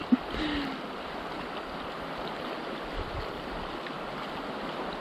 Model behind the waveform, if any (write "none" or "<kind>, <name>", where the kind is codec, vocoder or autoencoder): none